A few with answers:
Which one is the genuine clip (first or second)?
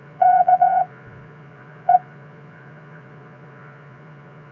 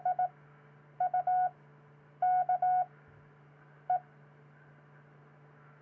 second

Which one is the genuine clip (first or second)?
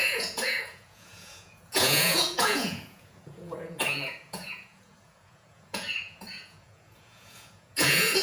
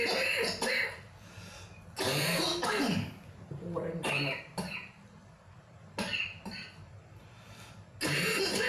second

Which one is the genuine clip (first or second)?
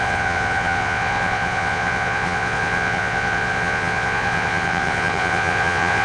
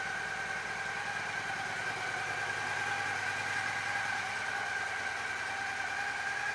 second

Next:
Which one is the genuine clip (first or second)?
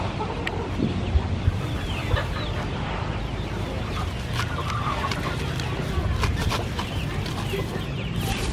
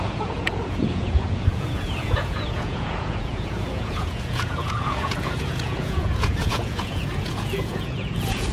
first